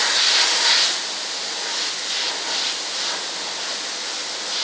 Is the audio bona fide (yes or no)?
yes